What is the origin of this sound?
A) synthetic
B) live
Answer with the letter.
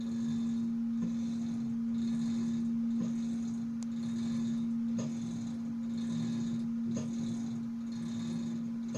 B